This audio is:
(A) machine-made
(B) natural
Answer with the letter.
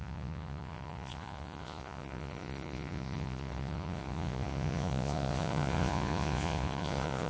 A